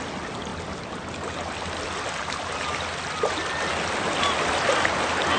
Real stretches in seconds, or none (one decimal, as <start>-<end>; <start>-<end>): 0.0-5.4